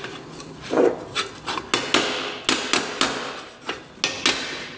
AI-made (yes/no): no